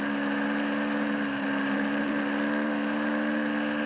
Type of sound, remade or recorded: recorded